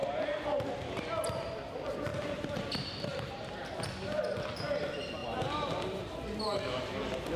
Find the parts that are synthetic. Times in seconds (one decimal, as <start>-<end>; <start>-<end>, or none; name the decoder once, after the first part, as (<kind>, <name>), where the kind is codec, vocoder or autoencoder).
2.1-4.2 (vocoder, BigVGAN v2); 5.2-6.1